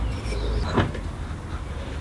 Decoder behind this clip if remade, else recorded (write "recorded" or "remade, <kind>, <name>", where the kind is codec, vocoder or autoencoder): recorded